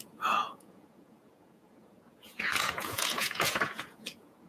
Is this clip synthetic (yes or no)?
yes